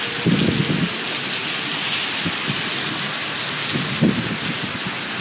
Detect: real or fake real